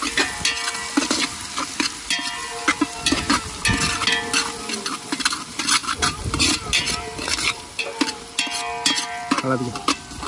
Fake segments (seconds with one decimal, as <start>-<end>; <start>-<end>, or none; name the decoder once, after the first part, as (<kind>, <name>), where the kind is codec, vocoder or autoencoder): 5.8-6.6 (vocoder, BigVGAN v2)